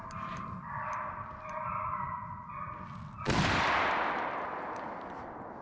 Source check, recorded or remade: recorded